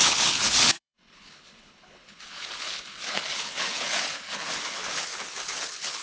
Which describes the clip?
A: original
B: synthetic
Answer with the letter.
B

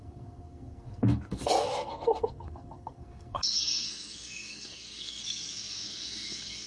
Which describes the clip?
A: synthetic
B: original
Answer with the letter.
A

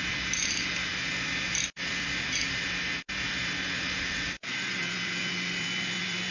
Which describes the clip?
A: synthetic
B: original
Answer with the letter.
B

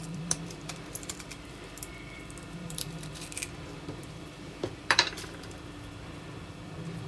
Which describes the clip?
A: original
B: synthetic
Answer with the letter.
B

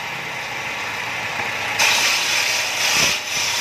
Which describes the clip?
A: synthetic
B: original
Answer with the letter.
B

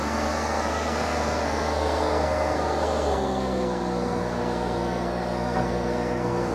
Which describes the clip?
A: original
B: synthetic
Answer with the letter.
B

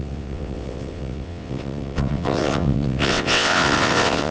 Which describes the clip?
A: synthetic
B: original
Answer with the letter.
A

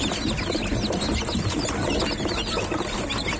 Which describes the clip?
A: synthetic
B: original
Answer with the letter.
B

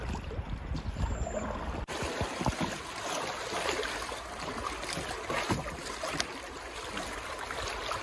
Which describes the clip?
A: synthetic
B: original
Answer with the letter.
B